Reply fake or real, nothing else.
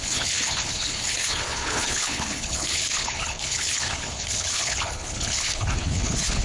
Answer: fake